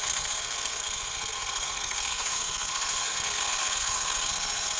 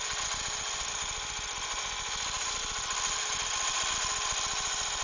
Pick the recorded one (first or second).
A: second